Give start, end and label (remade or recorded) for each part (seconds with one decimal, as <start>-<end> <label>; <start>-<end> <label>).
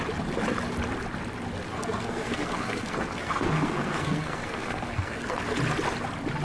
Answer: 0.0-1.7 recorded; 1.7-5.4 remade; 5.4-6.4 recorded